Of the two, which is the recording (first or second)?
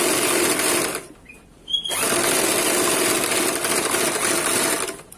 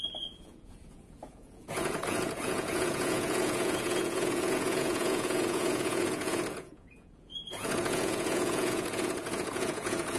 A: first